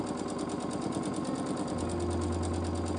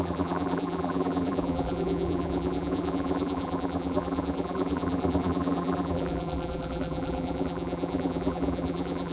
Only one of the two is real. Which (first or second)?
first